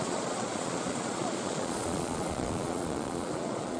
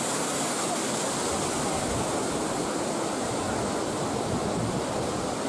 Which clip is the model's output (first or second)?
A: first